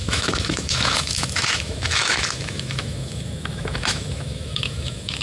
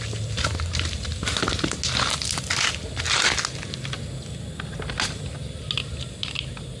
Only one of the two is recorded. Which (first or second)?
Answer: second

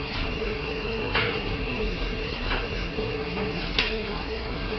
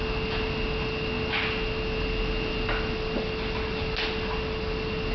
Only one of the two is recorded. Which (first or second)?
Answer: second